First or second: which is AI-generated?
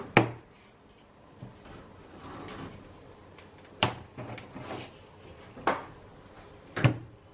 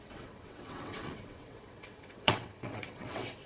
second